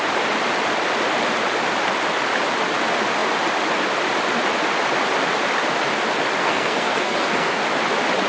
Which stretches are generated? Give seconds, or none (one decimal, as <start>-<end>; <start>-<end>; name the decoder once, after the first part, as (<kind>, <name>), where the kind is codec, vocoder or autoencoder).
6.4-7.6 (codec, SNAC)

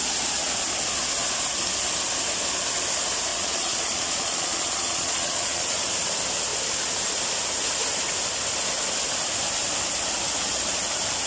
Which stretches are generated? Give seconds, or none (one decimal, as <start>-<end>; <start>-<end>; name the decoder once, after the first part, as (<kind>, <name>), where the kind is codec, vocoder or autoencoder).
3.3-5.8 (vocoder, Vocos)

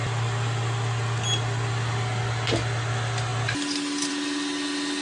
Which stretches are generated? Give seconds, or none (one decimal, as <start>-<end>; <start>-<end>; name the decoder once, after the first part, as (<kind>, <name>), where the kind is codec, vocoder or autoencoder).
none